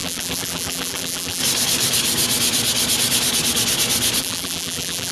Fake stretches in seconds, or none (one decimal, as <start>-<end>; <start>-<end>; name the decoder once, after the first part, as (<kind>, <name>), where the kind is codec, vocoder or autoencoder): 0.0-1.4 (vocoder, BigVGAN v2); 4.2-5.1